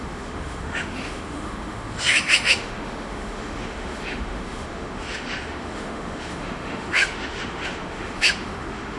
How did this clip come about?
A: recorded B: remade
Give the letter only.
B